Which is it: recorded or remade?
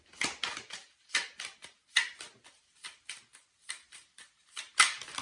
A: recorded